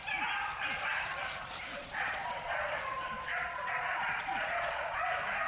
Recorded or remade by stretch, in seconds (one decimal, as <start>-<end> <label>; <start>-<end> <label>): 0.0-1.8 recorded; 1.8-5.1 remade; 5.1-5.5 recorded